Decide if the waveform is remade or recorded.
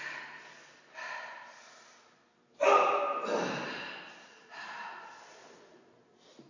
recorded